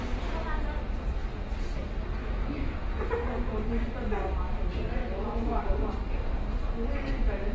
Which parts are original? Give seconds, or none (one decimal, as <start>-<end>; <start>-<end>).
0.0-2.2; 2.7-5.0; 5.6-7.5